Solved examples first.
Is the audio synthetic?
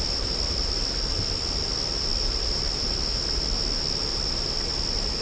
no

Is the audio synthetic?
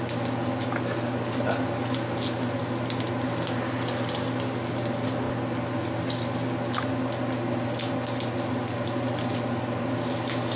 no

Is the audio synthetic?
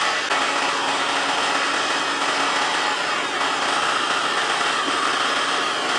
no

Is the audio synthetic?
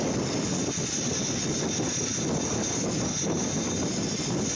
no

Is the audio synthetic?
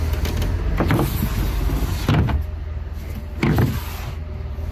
no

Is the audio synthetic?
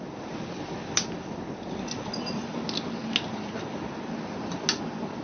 no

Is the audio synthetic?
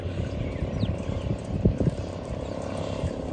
yes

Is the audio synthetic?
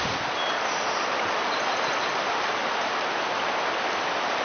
no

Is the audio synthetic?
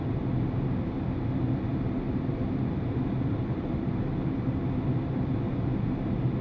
no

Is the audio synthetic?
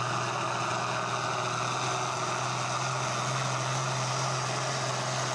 no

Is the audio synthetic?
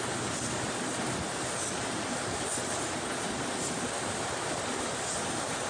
no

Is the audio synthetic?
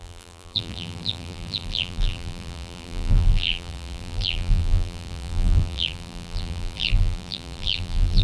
yes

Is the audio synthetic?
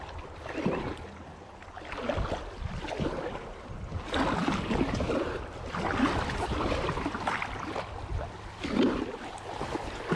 no